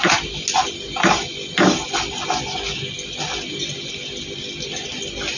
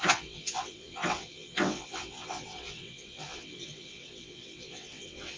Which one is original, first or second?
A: first